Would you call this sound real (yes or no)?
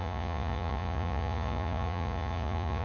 no